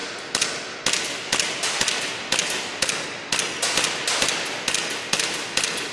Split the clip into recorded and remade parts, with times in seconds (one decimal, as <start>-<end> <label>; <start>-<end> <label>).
0.0-5.9 recorded